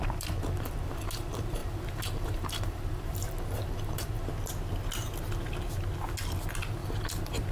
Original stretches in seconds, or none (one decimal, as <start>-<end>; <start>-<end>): 0.0-1.6; 4.1-6.8